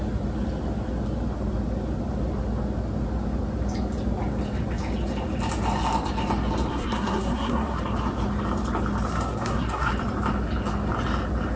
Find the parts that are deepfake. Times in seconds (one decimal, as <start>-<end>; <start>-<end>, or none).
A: 6.7-7.8; 9.1-9.9